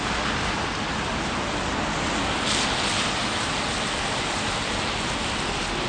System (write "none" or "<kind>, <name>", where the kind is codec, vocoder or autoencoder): none